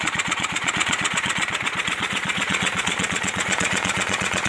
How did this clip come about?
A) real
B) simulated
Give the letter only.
B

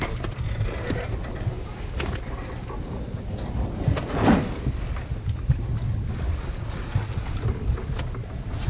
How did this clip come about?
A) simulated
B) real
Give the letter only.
B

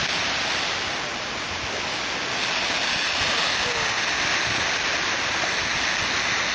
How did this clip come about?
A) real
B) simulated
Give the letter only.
A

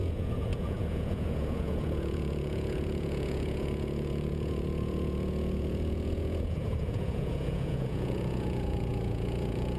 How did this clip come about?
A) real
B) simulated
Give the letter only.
B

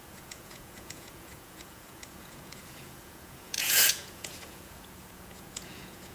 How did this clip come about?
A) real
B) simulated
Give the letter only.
B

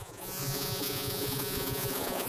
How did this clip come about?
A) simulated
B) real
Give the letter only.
A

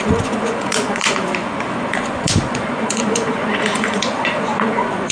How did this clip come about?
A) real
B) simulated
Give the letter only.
B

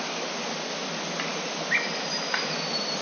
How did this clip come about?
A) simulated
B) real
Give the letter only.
B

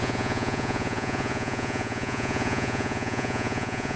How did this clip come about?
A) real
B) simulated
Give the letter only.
B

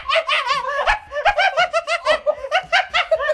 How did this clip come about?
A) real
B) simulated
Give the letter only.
A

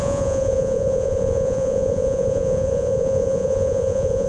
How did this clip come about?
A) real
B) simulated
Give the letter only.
B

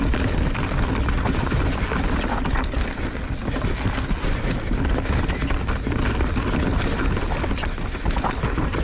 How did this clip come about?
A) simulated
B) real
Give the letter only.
B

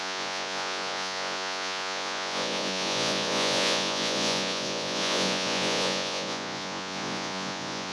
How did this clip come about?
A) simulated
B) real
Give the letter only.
A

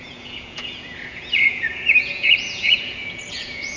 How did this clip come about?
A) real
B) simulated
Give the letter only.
B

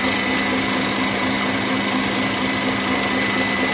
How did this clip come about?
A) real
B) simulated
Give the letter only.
A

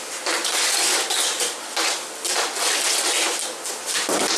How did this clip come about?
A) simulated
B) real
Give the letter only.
B